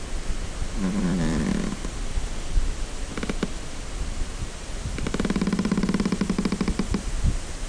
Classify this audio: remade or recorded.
remade